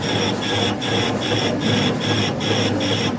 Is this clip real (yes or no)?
yes